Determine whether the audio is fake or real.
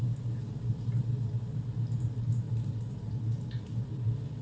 real